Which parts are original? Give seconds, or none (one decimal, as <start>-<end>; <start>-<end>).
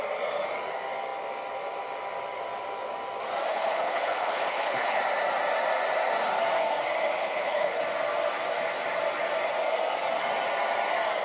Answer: 0.0-3.5; 5.0-7.2; 7.8-11.2